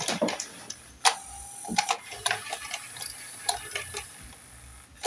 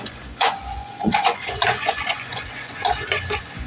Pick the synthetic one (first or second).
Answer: second